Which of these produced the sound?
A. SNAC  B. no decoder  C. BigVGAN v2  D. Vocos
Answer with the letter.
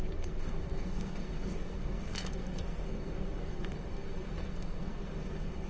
A